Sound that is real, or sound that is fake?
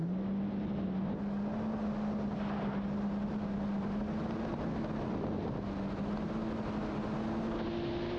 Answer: real